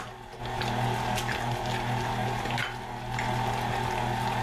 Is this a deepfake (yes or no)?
no